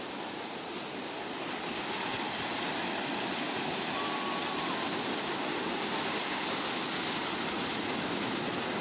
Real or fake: real